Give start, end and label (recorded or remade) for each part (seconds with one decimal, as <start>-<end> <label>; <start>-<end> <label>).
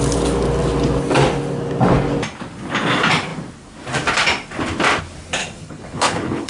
0.0-5.4 recorded; 5.4-6.5 remade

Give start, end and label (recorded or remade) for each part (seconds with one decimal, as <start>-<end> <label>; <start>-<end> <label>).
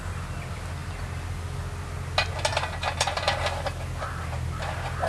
0.0-5.1 recorded